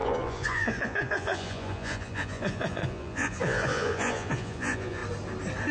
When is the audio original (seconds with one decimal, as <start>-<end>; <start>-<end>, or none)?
5.0-5.7